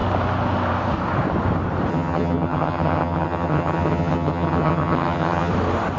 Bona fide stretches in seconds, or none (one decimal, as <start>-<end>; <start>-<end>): 0.0-1.9; 5.5-6.0